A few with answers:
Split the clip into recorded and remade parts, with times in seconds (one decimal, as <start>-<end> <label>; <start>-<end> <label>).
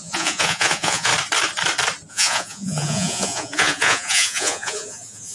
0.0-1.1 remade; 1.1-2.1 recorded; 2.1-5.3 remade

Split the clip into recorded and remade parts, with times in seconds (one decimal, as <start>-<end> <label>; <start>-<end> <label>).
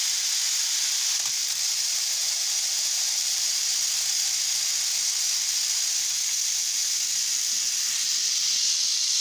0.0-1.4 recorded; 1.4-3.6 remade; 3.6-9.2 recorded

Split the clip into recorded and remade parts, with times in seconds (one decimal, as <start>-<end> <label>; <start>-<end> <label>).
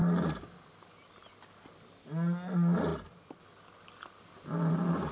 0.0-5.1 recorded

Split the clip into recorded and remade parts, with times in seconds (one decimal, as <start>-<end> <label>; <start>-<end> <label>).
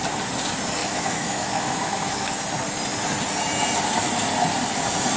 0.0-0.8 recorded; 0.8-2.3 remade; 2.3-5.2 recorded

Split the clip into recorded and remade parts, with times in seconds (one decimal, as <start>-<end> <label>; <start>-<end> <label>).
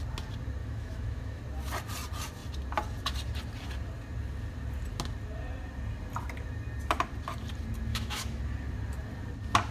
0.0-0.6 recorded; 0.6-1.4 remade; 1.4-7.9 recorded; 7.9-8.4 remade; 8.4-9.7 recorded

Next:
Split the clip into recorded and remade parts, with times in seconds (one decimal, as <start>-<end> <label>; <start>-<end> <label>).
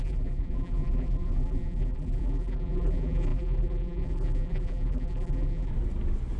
0.0-5.7 remade; 5.7-6.4 recorded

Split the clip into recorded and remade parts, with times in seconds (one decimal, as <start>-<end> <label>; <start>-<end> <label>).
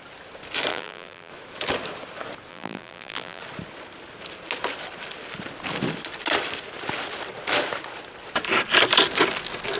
0.0-0.7 recorded; 0.7-1.3 remade; 1.3-2.5 recorded; 2.5-3.4 remade; 3.4-9.8 recorded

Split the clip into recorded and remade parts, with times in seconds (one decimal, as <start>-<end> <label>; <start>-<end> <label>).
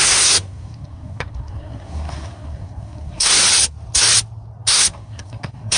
0.0-3.4 remade; 3.4-4.7 recorded; 4.7-5.8 remade